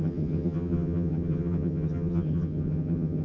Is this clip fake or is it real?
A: fake